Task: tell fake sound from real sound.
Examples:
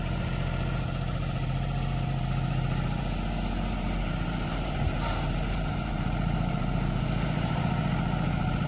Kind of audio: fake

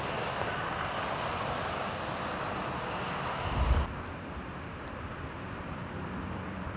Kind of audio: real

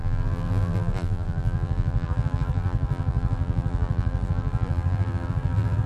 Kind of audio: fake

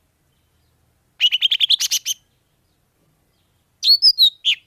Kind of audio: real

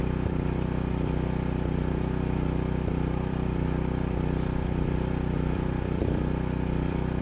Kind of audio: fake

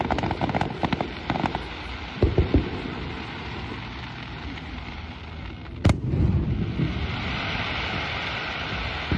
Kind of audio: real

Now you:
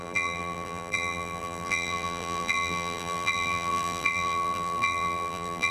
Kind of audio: fake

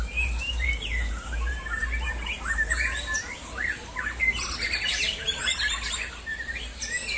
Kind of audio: fake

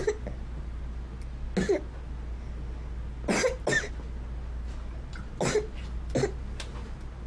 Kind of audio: real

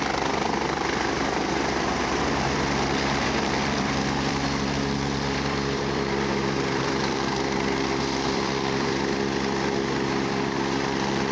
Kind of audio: fake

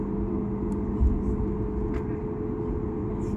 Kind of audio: real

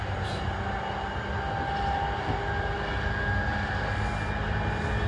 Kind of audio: real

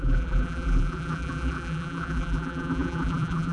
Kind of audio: fake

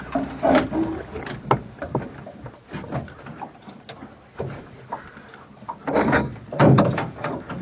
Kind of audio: real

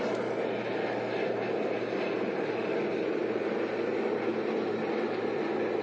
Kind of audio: real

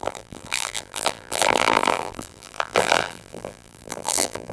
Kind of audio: fake